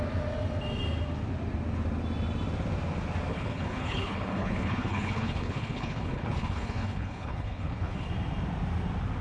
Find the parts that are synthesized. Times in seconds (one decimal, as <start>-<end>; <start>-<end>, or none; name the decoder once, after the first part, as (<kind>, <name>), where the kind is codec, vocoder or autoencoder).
3.3-8.1 (codec, HILCodec)

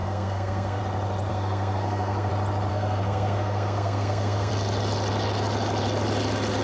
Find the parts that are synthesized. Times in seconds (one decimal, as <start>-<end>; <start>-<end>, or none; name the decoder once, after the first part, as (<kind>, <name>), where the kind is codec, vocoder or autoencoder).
0.0-0.8 (codec, SNAC); 1.3-2.3; 2.7-4.5

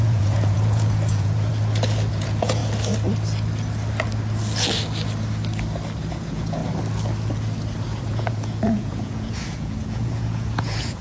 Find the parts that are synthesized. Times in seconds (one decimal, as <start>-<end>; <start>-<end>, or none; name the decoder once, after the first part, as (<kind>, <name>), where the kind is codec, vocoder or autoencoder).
0.0-1.5 (vocoder, Vocos); 2.1-2.6; 6.1-6.6; 8.0-11.0

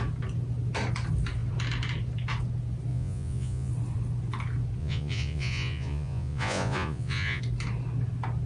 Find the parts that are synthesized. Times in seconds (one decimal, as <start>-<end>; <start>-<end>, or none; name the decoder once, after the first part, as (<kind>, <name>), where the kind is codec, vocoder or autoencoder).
2.9-3.7 (vocoder, Vocos); 4.8-7.4

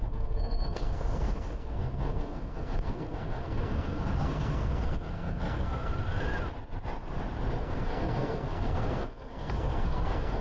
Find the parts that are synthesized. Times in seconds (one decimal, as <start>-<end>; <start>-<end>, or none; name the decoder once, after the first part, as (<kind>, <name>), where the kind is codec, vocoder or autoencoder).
0.0-5.9 (codec, SNAC); 7.6-10.4

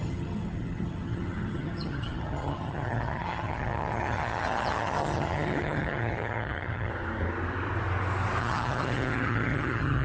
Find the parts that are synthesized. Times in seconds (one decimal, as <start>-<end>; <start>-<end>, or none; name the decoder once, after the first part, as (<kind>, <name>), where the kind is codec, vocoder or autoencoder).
0.0-6.9 (vocoder, HiFi-GAN); 8.4-10.0

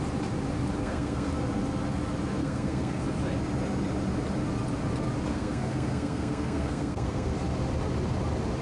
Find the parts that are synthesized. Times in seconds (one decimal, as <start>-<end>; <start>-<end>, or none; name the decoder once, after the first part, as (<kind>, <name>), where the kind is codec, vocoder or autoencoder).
0.8-1.3 (codec, SNAC); 2.4-3.0; 5.3-7.3